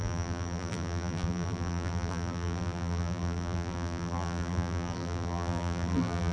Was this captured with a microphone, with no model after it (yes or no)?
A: no